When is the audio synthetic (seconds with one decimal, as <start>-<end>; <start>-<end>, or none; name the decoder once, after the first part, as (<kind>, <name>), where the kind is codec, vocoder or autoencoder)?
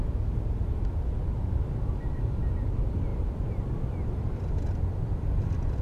3.1-5.8 (vocoder, BigVGAN v2)